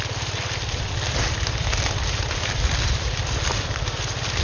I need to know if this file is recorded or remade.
remade